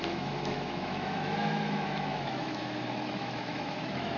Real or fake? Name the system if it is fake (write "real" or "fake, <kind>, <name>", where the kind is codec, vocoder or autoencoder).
fake, autoencoder, DAC-VAE